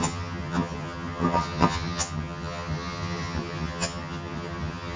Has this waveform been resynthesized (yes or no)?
yes